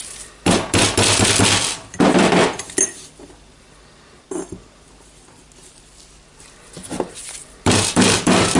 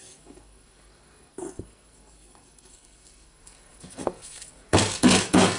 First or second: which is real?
first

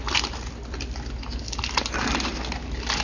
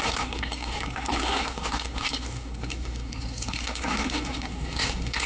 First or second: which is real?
first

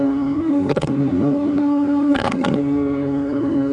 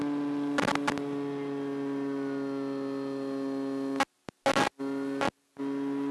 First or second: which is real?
second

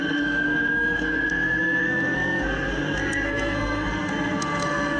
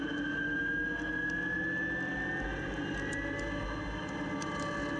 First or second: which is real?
second